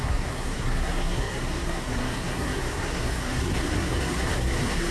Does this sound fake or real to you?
fake